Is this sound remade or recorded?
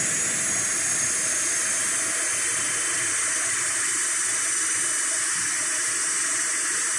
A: recorded